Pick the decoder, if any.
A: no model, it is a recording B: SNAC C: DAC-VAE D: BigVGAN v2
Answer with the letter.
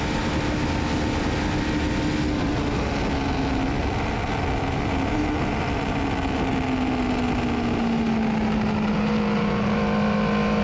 A